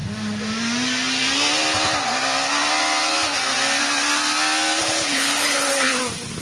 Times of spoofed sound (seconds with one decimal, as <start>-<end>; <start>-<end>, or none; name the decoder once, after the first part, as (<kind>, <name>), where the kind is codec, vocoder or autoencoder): 4.8-6.0 (codec, HILCodec)